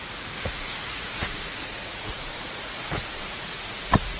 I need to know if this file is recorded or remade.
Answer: remade